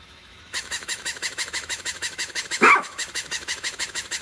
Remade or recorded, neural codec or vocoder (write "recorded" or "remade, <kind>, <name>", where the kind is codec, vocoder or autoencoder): remade, autoencoder, DAC-VAE